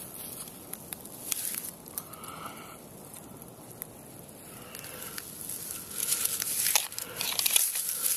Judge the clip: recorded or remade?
recorded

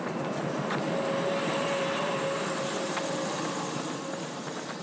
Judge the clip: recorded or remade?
recorded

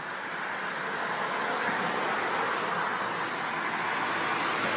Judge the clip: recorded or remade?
recorded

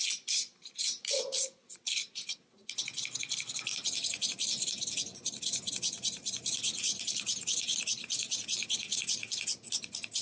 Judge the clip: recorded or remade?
recorded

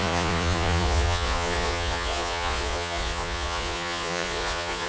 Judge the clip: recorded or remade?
remade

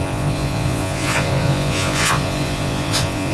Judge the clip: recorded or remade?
remade